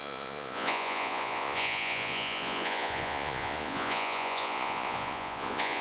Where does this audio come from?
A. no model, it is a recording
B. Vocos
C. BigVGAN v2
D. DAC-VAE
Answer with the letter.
B